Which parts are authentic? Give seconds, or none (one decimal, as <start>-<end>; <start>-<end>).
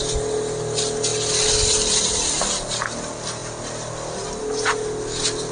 0.0-5.5